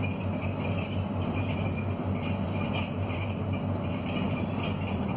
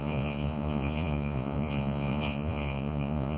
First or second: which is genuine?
first